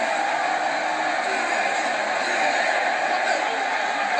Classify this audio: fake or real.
real